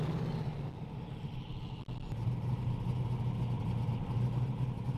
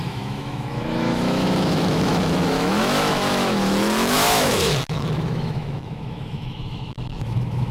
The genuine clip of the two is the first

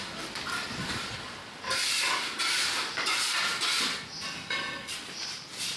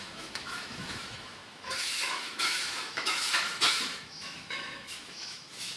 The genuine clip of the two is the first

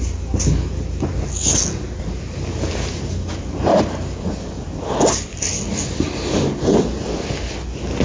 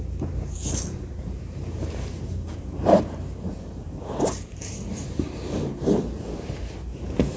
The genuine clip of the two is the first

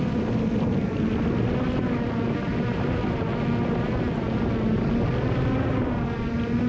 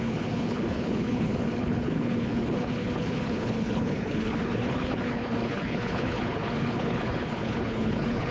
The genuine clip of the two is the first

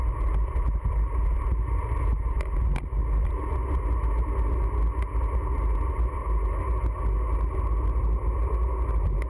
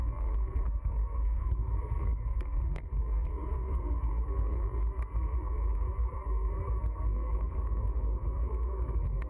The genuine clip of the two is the first